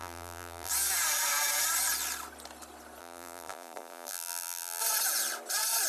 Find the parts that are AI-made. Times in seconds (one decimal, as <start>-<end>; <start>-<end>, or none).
0.0-0.7; 3.0-4.8